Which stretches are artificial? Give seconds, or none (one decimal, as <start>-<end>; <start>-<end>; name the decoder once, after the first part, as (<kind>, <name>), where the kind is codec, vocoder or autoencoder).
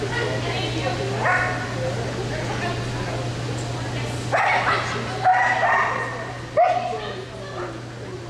none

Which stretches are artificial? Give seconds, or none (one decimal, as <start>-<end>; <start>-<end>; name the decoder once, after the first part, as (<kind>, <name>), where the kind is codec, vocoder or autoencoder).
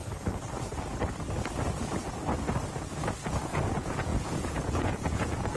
3.3-5.6 (vocoder, Vocos)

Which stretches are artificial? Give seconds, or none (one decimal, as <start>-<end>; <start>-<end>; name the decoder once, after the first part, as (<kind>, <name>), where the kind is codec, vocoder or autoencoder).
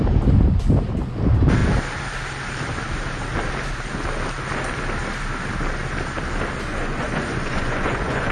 6.7-8.3 (vocoder, Vocos)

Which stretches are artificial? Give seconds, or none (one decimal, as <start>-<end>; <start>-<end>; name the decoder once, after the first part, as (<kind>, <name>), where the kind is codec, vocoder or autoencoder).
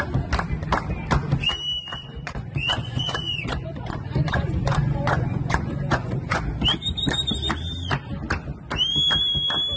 1.9-6.4 (vocoder, Vocos)